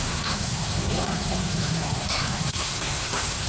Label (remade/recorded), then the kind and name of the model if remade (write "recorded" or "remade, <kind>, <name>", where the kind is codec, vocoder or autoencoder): remade, codec, SNAC